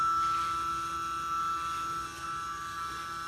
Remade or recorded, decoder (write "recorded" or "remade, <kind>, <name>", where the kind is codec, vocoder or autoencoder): recorded